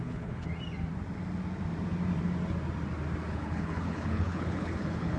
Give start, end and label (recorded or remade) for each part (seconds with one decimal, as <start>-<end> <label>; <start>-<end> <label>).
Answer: 0.0-0.5 remade; 0.5-3.3 recorded; 3.3-5.2 remade